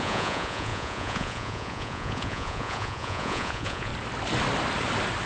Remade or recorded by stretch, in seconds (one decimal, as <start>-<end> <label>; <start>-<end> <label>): 0.0-3.9 remade; 3.9-5.3 recorded